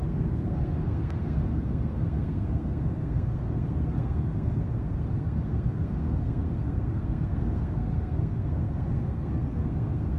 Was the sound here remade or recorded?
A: remade